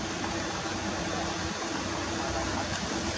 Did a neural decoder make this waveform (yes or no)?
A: no